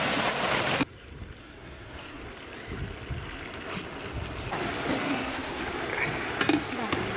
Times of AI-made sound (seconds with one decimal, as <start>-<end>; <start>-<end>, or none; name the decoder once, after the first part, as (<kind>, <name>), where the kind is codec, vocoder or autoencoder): 1.4-2.2 (codec, SNAC); 5.0-5.6